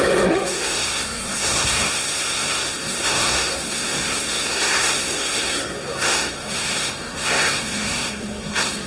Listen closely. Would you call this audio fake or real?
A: fake